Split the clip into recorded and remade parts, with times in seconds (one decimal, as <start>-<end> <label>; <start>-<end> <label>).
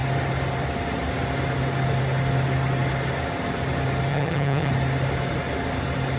0.0-4.1 recorded; 4.1-4.7 remade; 4.7-6.2 recorded